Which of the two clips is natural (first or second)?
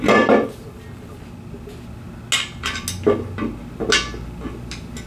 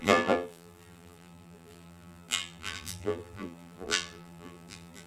first